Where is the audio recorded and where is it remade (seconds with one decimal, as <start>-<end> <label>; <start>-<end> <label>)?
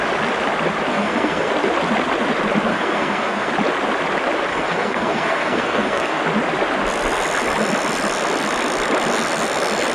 0.0-0.9 recorded; 0.9-1.5 remade; 1.5-2.7 recorded; 2.7-3.5 remade; 3.5-4.5 recorded; 4.5-6.2 remade; 6.2-9.9 recorded